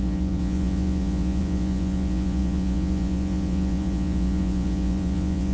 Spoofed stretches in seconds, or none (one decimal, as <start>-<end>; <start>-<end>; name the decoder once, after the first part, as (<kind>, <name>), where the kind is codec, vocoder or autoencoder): 0.0-5.5 (vocoder, Vocos)